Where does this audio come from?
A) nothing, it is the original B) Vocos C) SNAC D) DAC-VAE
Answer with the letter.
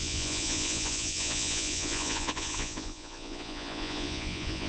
B